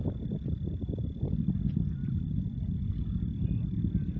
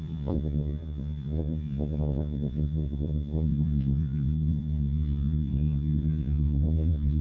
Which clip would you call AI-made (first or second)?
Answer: second